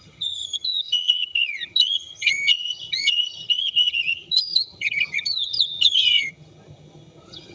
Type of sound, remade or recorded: remade